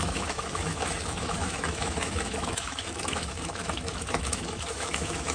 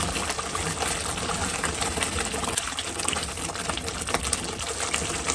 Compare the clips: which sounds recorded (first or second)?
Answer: second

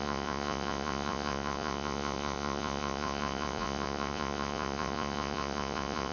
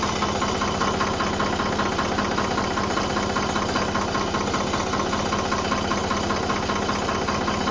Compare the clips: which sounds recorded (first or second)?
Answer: second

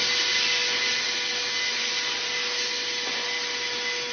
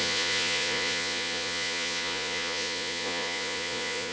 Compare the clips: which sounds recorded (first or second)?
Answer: first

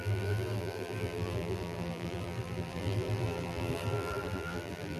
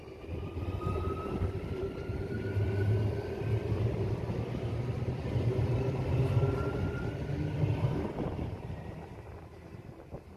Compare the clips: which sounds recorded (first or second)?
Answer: second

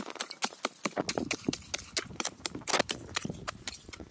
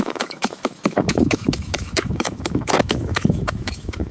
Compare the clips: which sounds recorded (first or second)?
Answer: first